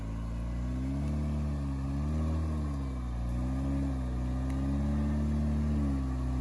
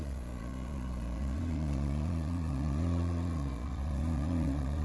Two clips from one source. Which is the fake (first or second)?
second